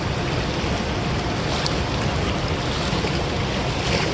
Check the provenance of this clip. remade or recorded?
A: recorded